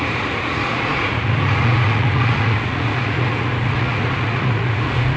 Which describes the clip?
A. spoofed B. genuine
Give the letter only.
A